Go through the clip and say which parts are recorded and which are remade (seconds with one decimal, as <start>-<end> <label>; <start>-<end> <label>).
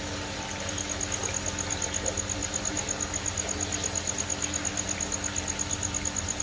0.0-6.4 recorded